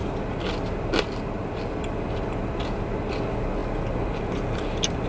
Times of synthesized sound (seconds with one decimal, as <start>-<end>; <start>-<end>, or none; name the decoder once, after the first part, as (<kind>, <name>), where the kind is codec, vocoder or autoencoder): none